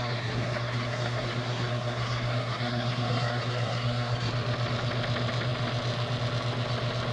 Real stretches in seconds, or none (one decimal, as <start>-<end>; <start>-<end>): 4.3-7.1